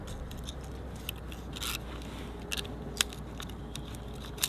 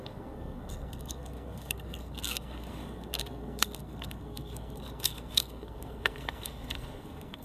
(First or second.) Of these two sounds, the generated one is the second